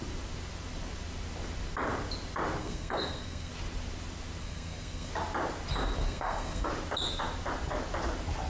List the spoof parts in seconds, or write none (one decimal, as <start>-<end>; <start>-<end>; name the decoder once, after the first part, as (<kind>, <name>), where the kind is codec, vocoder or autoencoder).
2.6-3.5 (codec, SNAC); 4.4-5.1; 6.0-6.7